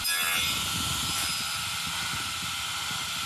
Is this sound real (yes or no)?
yes